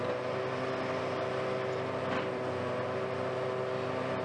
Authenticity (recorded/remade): recorded